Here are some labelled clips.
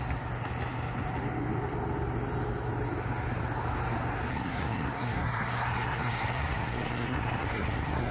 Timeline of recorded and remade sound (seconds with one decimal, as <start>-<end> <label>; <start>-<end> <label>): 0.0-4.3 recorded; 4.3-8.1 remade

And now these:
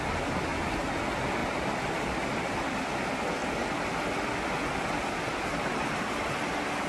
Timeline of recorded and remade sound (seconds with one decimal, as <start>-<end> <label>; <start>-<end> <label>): 0.0-6.9 recorded

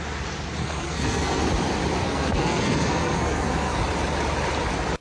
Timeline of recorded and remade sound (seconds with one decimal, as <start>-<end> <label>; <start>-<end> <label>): 0.0-0.6 recorded; 0.6-1.4 remade; 1.4-2.0 recorded; 2.0-3.8 remade; 3.8-5.0 recorded

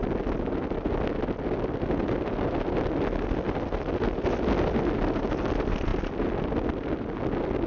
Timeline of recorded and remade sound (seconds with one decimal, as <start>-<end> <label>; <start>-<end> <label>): 0.0-7.7 recorded